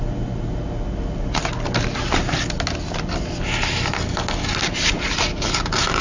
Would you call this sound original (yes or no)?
yes